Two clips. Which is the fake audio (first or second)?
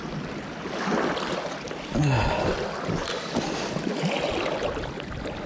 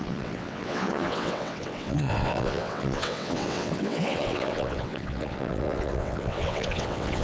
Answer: second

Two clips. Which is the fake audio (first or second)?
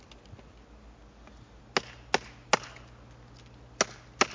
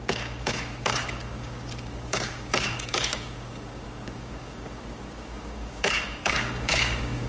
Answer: second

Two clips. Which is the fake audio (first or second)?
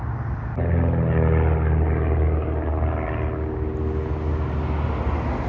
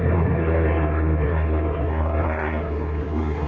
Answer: second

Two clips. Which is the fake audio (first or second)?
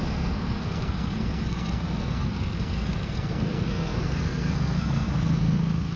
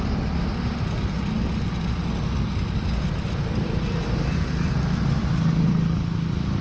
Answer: first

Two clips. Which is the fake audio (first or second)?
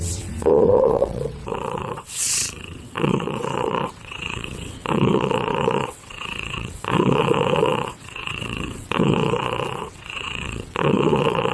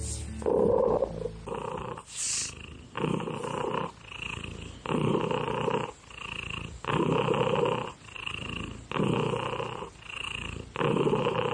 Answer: first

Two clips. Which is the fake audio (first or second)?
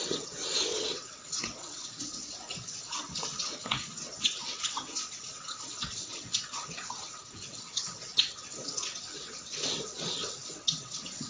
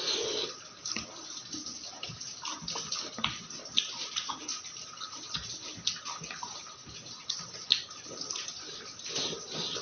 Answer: first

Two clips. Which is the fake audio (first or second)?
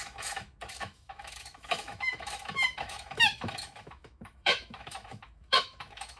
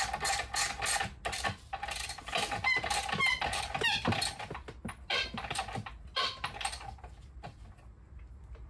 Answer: first